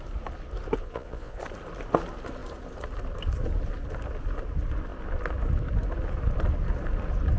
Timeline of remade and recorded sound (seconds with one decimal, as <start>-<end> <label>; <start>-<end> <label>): 0.0-0.8 recorded; 0.8-1.4 remade; 1.4-7.4 recorded